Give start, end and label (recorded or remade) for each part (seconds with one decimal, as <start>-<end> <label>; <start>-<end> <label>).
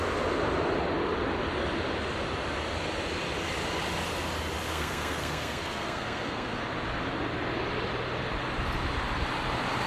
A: 0.0-4.7 recorded; 4.7-6.6 remade; 6.6-9.9 recorded